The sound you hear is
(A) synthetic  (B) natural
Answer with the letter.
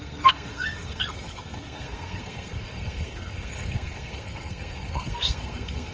A